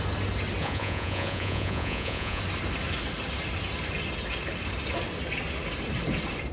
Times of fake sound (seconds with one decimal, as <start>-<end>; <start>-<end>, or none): 0.6-2.4